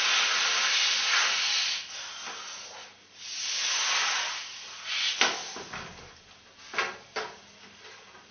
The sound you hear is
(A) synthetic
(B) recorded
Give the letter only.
B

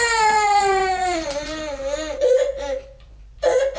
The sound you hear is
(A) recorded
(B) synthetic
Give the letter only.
B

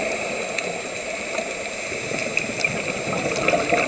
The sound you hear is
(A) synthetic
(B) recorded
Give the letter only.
B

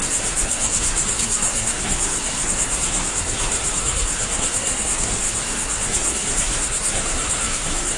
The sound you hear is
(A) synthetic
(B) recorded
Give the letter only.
A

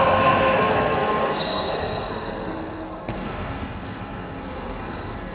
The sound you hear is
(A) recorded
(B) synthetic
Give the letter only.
B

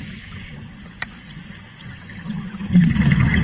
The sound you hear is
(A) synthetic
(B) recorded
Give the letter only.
A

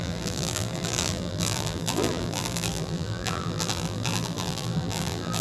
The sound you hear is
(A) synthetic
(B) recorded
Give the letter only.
A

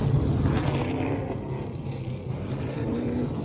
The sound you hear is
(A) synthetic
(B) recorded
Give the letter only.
B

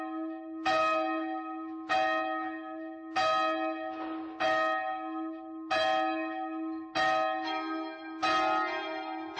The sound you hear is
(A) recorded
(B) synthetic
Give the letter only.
A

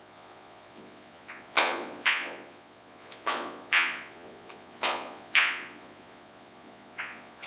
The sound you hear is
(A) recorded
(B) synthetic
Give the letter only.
B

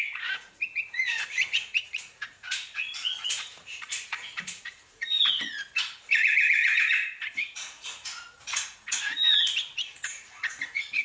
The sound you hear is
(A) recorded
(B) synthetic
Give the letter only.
B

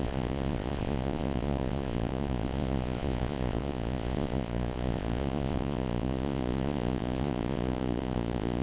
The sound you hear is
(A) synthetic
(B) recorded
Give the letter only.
A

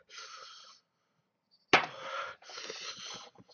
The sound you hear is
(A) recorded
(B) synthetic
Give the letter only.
A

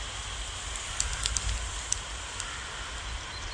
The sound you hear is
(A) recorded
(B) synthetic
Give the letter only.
A